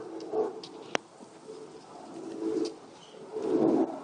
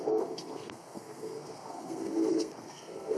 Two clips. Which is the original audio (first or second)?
first